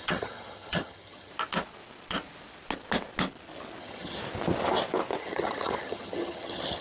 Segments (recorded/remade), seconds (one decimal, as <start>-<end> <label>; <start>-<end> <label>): 0.0-1.3 remade; 1.3-3.8 recorded; 3.8-4.2 remade; 4.2-5.2 recorded; 5.2-6.8 remade